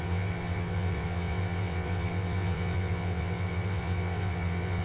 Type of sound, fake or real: fake